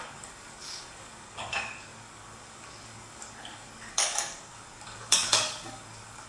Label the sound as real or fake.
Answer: fake